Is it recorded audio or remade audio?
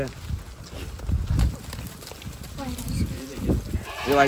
recorded